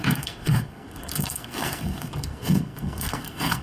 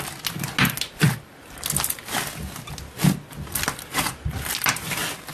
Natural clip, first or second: second